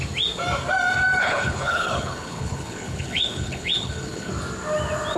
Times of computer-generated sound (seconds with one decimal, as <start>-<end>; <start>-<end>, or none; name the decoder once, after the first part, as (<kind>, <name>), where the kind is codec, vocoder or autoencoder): 1.2-4.3 (codec, HILCodec)